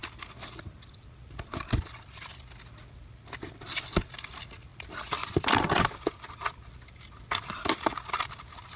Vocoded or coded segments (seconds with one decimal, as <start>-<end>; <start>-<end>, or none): none